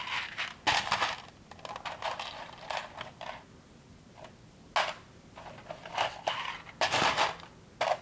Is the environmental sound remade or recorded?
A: recorded